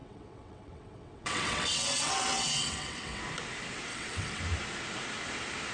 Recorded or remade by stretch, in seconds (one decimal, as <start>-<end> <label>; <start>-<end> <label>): 0.0-3.2 remade; 3.2-3.9 recorded; 3.9-4.4 remade; 4.4-5.7 recorded